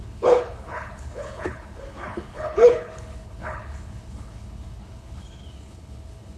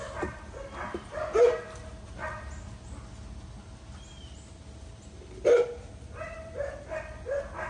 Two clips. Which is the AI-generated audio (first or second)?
first